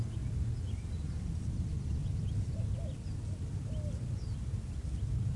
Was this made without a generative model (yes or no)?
yes